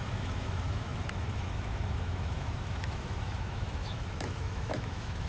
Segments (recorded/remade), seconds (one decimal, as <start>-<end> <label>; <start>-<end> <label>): 0.0-5.3 remade